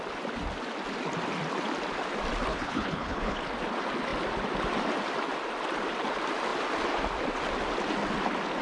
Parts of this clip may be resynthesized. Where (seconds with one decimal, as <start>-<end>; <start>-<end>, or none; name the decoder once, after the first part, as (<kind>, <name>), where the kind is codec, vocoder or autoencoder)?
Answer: 2.5-3.4 (codec, HILCodec)